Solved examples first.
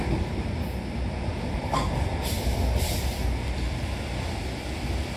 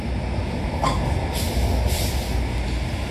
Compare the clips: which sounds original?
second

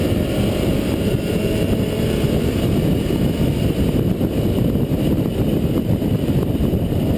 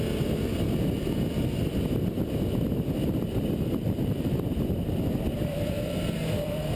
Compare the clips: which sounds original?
second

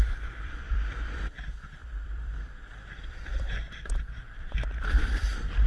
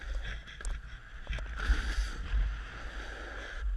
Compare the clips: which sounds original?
second